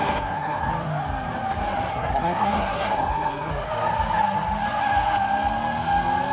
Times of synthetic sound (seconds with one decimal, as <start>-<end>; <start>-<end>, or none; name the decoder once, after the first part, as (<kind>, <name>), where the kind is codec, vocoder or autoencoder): 0.0-0.7 (codec, SNAC); 1.9-3.5